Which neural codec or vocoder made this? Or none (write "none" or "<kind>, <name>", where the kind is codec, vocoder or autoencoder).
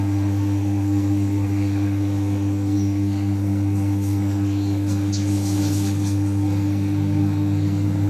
codec, SNAC